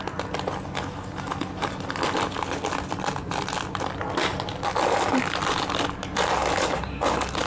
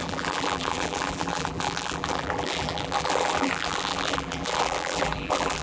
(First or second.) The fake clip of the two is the second